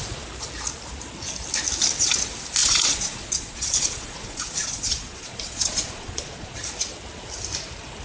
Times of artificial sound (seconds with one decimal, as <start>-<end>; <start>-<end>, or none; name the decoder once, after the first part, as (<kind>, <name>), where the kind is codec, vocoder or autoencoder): 2.6-6.6 (vocoder, Vocos)